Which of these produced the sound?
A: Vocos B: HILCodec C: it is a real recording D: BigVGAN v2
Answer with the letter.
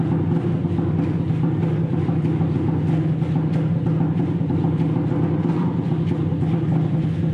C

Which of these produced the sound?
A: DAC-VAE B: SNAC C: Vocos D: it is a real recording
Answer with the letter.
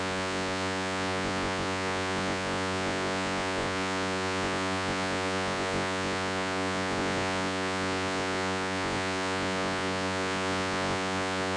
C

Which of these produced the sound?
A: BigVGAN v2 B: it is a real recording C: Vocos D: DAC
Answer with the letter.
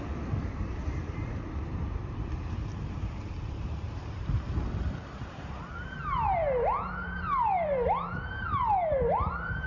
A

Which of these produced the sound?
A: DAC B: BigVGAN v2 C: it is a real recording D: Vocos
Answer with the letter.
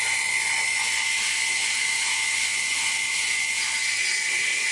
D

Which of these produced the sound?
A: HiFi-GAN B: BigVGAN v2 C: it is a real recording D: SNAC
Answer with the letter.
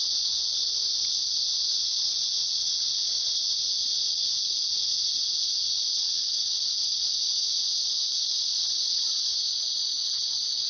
C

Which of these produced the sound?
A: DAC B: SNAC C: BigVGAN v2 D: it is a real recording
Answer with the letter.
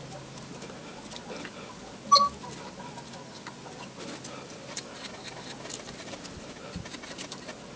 D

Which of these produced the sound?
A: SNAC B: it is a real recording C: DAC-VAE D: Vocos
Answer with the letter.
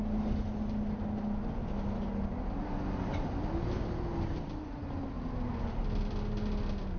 B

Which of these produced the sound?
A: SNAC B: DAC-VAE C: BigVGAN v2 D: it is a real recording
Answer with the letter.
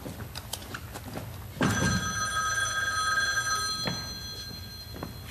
D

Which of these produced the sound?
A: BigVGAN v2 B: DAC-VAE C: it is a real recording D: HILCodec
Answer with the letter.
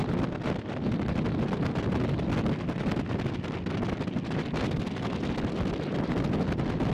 C